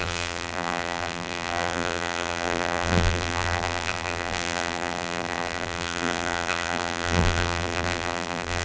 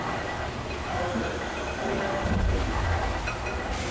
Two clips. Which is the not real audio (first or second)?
first